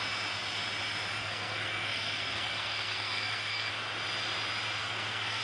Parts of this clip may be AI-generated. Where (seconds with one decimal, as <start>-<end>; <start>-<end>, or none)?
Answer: 1.2-3.7; 4.8-5.4